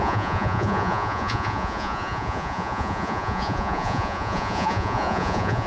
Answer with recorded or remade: remade